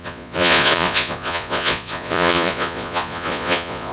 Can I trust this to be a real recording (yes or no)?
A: no